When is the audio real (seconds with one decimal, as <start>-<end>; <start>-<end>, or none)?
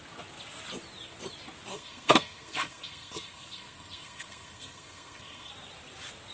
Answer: 0.0-1.7; 5.5-6.3